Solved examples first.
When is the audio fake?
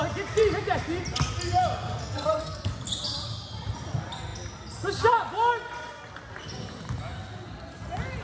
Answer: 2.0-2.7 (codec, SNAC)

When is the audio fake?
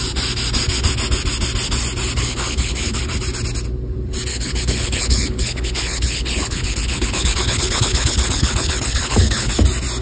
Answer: 2.2-3.0 (codec, HILCodec); 4.3-9.5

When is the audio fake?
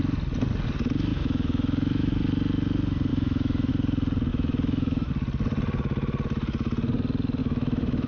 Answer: 1.1-2.1 (autoencoder, DAC-VAE); 3.1-3.7; 4.3-5.1; 7.4-8.1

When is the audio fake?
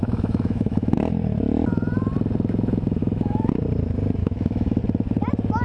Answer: 0.0-1.0 (autoencoder, DAC-VAE); 3.0-3.5; 4.2-4.8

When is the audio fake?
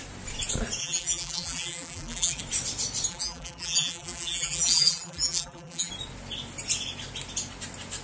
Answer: 0.8-2.4 (vocoder, BigVGAN v2); 3.1-5.9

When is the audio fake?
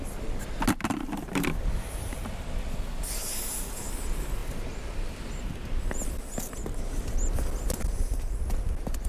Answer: none